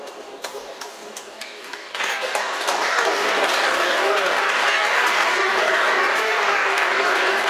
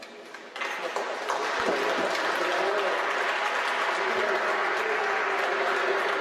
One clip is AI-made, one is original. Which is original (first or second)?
second